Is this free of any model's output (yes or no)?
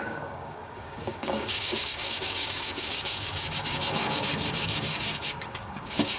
no